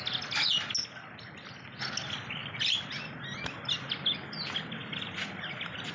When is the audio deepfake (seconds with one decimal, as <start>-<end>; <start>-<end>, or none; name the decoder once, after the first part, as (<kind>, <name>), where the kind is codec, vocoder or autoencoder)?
2.4-3.4 (vocoder, BigVGAN v2); 4.8-5.3